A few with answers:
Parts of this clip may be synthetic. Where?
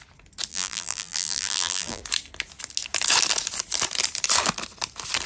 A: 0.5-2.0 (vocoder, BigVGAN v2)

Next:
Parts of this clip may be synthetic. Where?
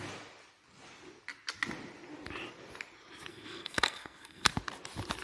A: 3.3-4.5 (codec, SNAC)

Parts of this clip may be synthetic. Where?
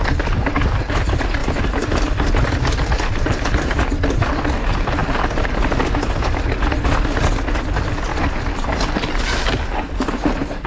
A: 1.4-4.5 (vocoder, BigVGAN v2); 8.1-8.8